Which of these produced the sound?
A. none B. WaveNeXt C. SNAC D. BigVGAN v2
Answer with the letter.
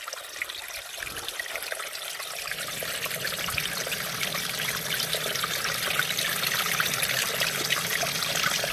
A